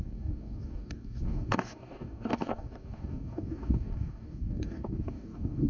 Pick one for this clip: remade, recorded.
remade